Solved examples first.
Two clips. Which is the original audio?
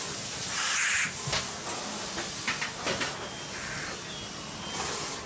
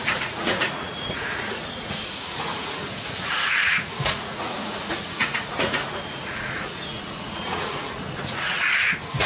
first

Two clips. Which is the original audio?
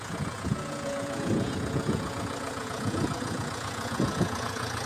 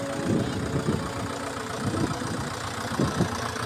second